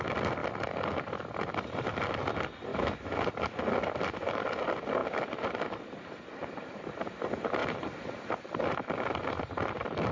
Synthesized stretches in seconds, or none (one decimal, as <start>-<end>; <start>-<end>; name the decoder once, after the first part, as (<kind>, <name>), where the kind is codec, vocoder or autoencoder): 2.7-3.3 (autoencoder, DAC-VAE)